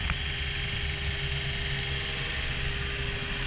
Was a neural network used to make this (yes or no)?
no